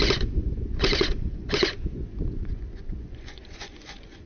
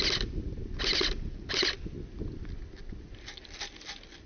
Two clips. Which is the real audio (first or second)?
second